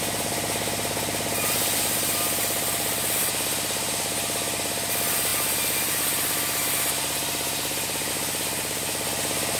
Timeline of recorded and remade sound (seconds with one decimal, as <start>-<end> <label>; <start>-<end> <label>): 0.0-3.2 remade; 3.2-3.9 recorded; 3.9-9.6 remade